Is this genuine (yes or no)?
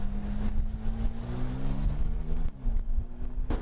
yes